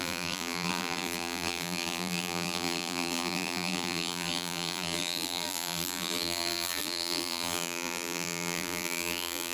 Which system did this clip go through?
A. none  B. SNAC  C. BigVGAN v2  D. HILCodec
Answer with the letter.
C